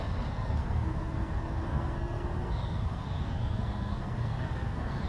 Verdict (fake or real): fake